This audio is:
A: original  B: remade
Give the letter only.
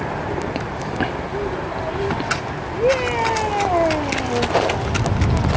A